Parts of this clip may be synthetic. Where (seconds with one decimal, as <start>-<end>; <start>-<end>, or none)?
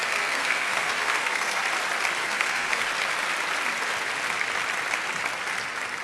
0.0-1.6; 2.2-2.8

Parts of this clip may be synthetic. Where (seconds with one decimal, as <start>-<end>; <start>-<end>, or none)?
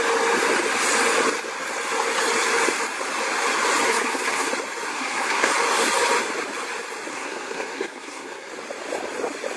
3.9-4.5; 4.9-5.5; 7.1-8.5